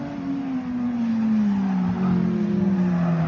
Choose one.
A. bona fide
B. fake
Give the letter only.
A